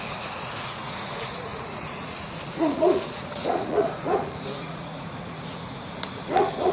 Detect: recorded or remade remade